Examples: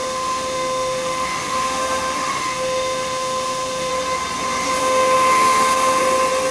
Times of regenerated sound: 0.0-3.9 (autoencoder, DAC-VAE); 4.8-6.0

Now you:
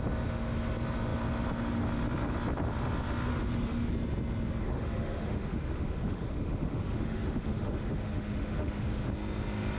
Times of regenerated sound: 3.3-3.9 (autoencoder, DAC-VAE); 4.6-9.1